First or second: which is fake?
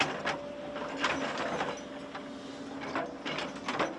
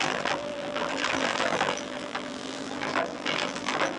second